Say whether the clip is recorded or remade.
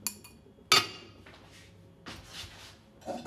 recorded